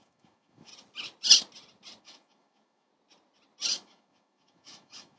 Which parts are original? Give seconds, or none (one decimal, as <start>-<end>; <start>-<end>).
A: 0.7-2.0; 2.9-3.7